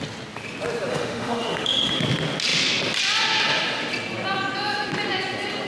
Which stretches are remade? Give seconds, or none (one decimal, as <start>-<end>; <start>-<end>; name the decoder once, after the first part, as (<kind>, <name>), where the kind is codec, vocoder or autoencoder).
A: 0.9-2.0 (autoencoder, DAC-VAE)